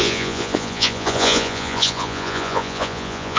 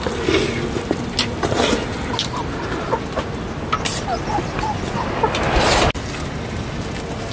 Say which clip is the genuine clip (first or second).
second